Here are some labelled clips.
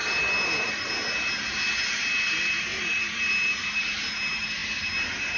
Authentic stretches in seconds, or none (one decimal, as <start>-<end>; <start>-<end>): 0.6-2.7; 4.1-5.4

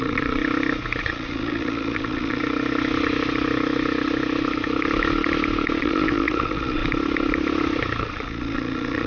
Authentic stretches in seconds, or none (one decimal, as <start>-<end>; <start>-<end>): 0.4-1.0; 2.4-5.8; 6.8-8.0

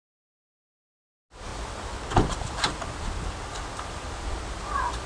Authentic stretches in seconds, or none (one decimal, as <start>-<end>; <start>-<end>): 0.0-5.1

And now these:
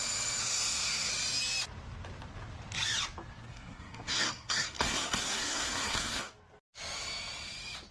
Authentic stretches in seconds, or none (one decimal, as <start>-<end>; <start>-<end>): 0.0-0.4; 1.1-3.5; 6.3-7.9

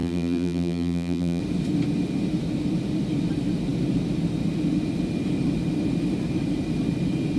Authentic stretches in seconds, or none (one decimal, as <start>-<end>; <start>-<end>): 1.4-7.4

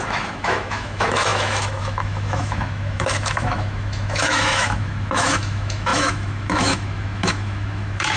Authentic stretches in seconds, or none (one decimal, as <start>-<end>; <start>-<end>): none